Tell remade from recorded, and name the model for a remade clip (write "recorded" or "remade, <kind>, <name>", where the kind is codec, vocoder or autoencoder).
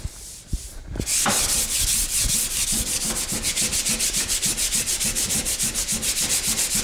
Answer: recorded